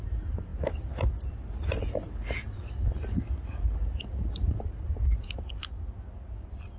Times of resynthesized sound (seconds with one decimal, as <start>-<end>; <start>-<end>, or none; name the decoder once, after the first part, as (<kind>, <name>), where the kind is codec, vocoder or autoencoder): none